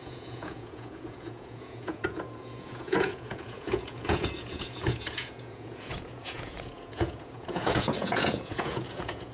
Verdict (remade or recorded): remade